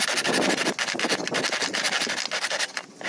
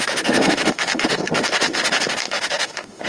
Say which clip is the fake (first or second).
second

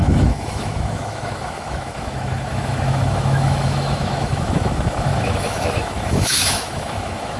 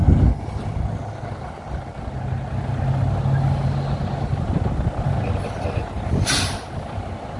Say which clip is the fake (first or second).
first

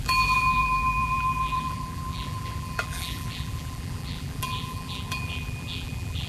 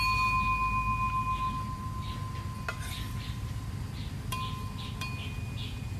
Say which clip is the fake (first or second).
first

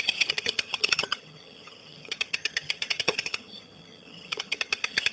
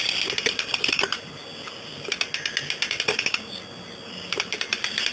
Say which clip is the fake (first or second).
first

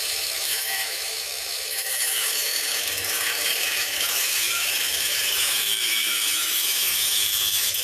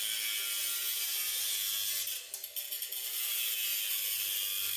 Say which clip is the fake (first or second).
first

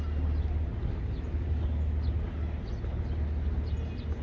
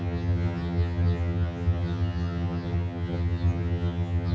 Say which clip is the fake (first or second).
second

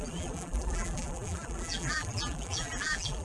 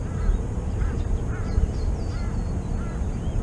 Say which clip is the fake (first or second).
first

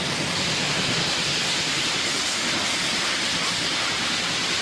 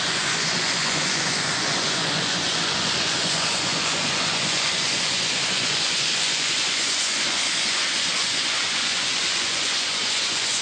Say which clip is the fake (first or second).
second